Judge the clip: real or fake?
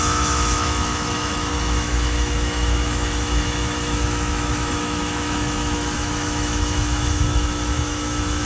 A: fake